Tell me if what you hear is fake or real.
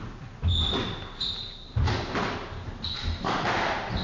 real